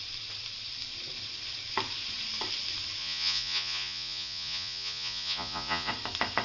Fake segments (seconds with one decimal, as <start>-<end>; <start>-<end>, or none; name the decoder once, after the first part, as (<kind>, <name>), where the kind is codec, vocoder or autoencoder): 3.0-5.9 (vocoder, Vocos)